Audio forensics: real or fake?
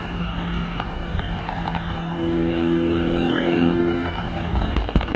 fake